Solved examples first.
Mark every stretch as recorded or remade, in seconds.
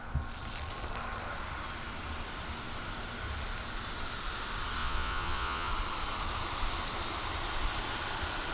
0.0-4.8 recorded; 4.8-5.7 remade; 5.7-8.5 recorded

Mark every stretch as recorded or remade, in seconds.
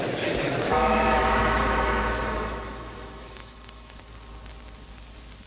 0.0-0.7 recorded; 0.7-4.0 remade; 4.0-5.5 recorded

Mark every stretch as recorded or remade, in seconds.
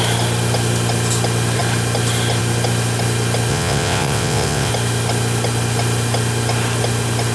0.0-3.5 recorded; 3.5-4.7 remade; 4.7-7.3 recorded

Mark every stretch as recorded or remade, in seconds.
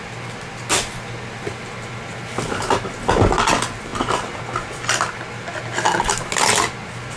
0.0-7.2 recorded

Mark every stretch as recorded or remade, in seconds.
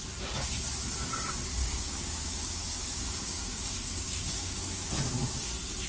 0.0-1.6 recorded; 1.6-4.9 remade; 4.9-5.9 recorded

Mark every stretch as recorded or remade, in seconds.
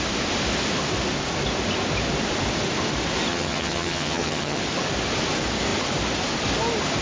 0.0-3.3 recorded; 3.3-4.6 remade; 4.6-7.0 recorded